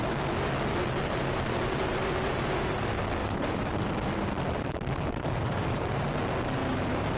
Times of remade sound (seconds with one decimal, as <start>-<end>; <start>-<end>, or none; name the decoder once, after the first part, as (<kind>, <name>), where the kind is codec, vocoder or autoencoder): 1.2-2.8 (vocoder, BigVGAN v2); 3.2-6.0; 6.6-7.2